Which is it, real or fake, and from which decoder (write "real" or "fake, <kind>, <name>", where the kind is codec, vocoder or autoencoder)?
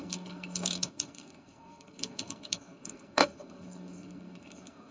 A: fake, codec, SNAC